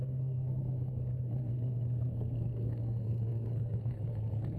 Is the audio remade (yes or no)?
yes